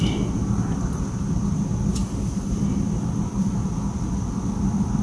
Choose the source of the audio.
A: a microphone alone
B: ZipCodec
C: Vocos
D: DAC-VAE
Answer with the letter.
A